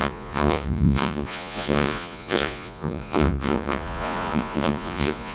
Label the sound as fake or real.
fake